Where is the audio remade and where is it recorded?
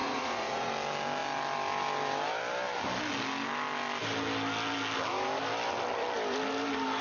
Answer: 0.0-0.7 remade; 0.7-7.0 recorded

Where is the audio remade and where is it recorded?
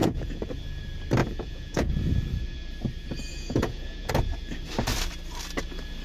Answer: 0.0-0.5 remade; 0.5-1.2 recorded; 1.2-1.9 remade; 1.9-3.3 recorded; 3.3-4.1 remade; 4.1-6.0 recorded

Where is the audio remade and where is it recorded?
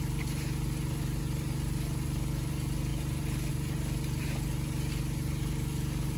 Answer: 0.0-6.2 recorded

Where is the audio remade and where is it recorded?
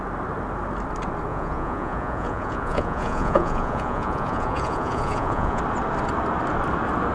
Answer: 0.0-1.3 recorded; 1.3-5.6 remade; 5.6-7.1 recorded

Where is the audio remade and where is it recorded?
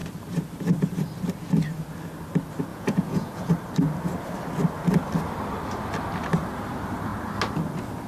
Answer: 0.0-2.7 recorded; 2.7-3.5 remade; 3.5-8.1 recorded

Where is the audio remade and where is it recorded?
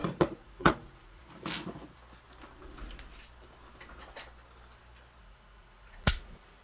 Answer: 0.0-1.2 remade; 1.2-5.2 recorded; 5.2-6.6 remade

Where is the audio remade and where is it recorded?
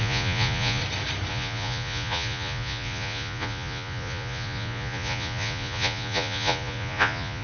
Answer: 0.0-0.8 remade; 0.8-1.3 recorded; 1.3-7.4 remade